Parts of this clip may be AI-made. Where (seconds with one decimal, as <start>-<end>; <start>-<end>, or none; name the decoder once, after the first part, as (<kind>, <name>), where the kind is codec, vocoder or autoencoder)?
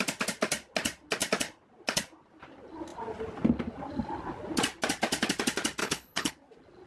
5.8-6.3 (codec, HILCodec)